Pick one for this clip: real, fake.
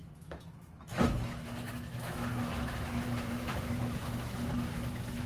fake